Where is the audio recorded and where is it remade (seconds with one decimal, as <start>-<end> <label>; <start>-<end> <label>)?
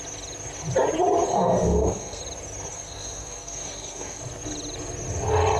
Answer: 0.0-1.3 recorded; 1.3-2.2 remade; 2.2-2.7 recorded; 2.7-4.2 remade; 4.2-5.6 recorded